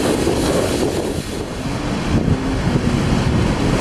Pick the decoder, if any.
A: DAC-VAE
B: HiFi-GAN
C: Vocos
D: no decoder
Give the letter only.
D